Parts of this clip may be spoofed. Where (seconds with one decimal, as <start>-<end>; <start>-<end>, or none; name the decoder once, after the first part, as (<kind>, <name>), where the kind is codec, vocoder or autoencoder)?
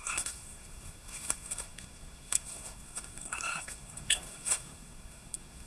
0.0-5.7 (codec, SNAC)